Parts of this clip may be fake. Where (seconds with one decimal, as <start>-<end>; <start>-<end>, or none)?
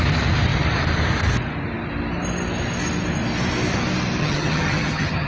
4.2-5.3